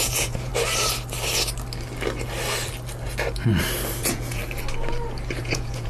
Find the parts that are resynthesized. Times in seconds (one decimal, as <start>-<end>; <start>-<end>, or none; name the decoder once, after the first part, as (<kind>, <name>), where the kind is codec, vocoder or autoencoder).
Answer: 0.0-0.5 (vocoder, Vocos); 4.0-4.4; 5.4-5.9

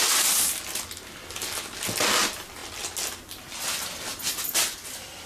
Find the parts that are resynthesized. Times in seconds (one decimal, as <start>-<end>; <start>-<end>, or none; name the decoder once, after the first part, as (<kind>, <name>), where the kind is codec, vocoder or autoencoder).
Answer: none